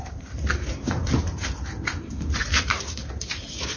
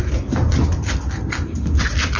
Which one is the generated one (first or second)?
first